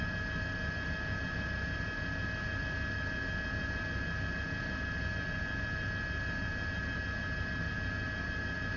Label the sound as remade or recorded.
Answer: recorded